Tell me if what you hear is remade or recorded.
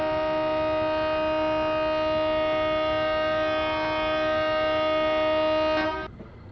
recorded